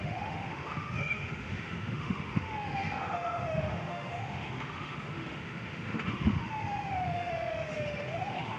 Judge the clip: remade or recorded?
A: remade